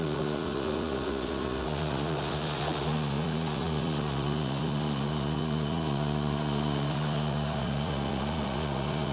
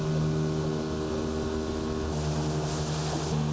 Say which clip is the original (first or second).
second